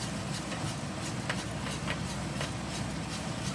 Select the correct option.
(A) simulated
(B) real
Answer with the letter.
B